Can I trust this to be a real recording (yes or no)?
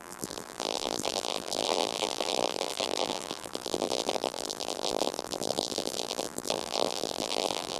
no